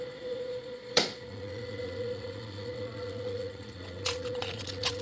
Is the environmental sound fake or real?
fake